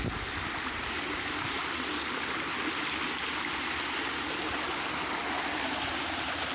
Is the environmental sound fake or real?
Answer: real